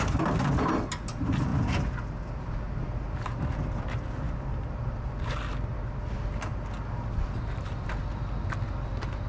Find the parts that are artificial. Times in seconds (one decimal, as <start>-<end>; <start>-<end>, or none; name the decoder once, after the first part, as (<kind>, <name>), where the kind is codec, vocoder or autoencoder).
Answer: none